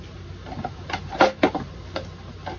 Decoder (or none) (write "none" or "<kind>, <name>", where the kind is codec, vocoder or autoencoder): none